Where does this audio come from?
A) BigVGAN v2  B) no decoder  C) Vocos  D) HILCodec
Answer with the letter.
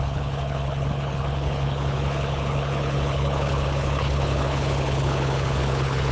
D